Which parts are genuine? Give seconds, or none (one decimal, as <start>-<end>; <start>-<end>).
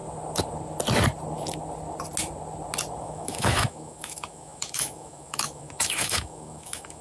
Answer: 0.0-3.0